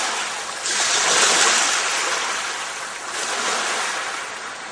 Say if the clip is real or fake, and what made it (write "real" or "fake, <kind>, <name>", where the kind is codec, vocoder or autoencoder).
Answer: real